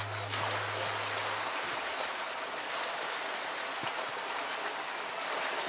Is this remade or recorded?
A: recorded